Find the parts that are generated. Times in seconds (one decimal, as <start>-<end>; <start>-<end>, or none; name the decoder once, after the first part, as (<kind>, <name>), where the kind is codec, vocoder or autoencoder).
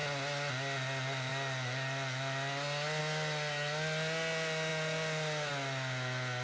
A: none